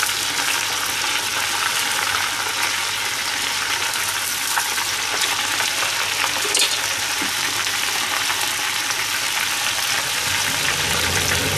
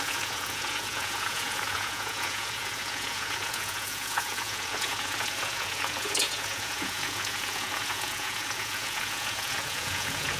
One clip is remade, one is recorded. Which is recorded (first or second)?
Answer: first